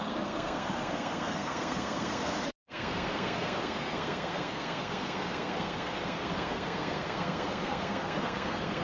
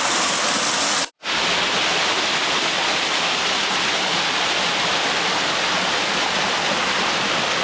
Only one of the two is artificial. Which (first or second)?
first